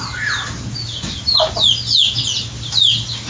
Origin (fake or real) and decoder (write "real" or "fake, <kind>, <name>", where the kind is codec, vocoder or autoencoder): real